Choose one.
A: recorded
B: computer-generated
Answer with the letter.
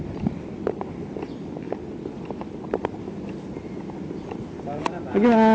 A